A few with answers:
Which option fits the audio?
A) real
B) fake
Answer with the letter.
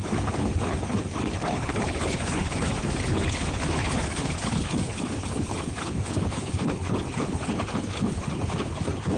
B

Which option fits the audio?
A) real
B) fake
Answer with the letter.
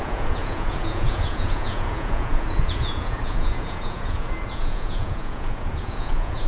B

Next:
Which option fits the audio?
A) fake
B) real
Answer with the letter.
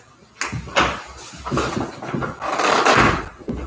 B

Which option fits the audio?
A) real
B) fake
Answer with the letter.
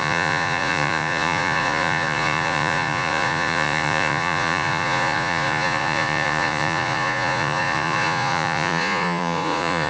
B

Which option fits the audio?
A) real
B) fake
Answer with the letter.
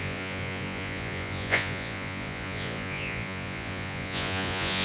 B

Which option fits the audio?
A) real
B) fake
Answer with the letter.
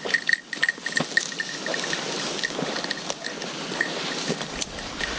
A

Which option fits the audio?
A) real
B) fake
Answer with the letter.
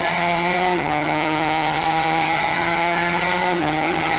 B